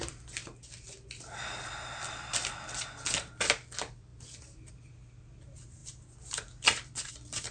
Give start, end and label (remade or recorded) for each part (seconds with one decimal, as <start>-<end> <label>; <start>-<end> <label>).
0.0-7.5 recorded